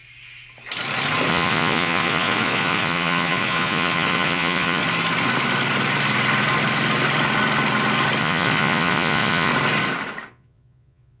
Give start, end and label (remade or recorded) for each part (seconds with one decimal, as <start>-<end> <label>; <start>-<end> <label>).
0.0-1.3 recorded; 1.3-4.8 remade; 4.8-8.2 recorded; 8.2-9.5 remade; 9.5-10.3 recorded; 10.3-11.2 remade